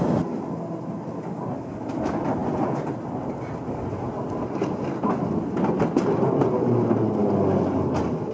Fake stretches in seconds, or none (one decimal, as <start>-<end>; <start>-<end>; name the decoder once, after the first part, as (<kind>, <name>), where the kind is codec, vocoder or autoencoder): none